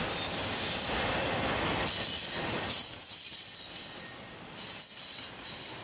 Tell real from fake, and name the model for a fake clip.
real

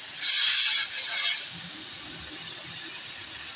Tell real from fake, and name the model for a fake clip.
real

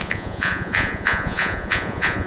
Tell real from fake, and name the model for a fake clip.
fake, vocoder, Vocos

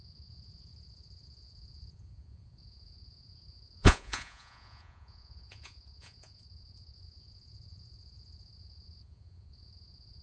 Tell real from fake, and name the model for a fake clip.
fake, vocoder, Vocos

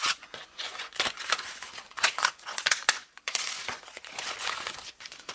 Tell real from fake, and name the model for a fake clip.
fake, vocoder, Vocos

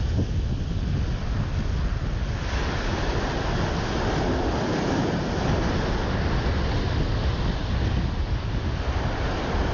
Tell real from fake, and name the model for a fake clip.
real